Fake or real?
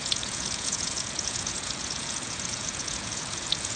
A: fake